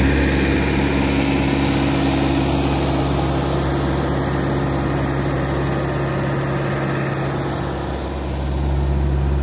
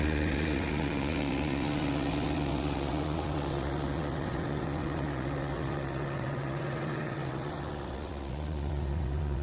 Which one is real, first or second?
first